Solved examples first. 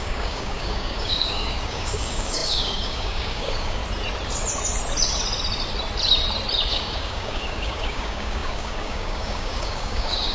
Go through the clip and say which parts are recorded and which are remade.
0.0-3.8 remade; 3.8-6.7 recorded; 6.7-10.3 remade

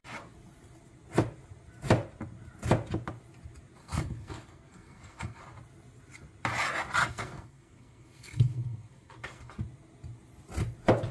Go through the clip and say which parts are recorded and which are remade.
0.0-3.8 recorded; 3.8-5.4 remade; 5.4-7.0 recorded; 7.0-9.5 remade; 9.5-11.1 recorded

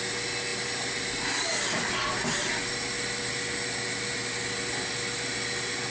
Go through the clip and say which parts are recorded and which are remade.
0.0-5.9 recorded

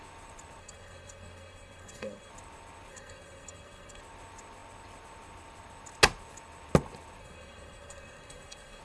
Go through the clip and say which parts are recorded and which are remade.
0.0-0.6 recorded; 0.6-2.3 remade; 2.3-2.9 recorded; 2.9-4.0 remade; 4.0-7.2 recorded; 7.2-8.8 remade

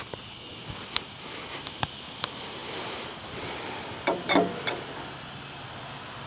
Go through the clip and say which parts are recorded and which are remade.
0.0-6.3 recorded

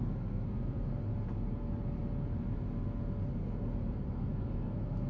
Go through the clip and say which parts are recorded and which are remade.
0.0-1.1 remade; 1.1-3.2 recorded; 3.2-5.1 remade

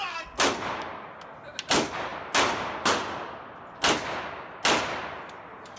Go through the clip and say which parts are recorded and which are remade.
0.0-5.8 recorded

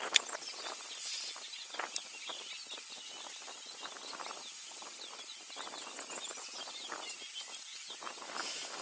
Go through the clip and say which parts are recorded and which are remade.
0.0-8.8 recorded